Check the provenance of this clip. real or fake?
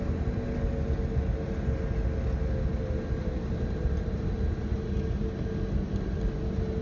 real